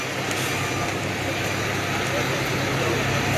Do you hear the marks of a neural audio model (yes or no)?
no